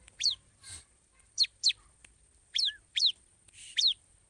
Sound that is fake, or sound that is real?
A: fake